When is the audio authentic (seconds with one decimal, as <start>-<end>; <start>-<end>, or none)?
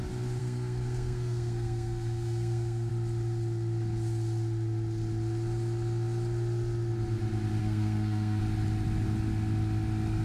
0.0-0.4; 2.9-7.6; 8.4-10.2